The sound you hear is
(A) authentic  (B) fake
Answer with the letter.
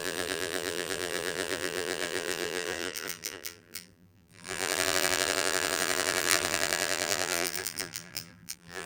B